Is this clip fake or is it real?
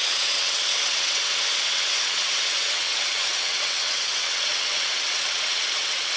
fake